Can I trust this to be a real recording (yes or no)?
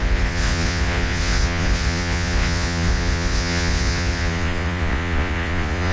no